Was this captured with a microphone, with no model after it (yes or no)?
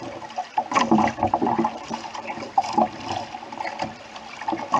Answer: no